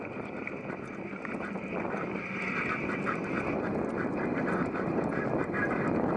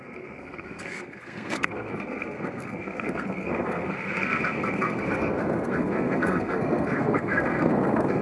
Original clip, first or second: first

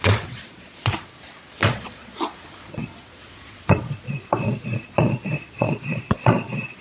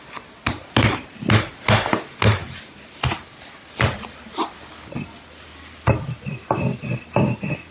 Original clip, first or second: second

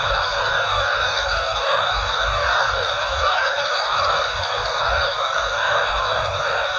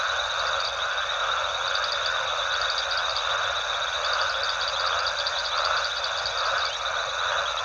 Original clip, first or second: second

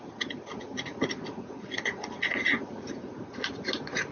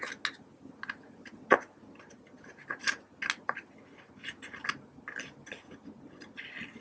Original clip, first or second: second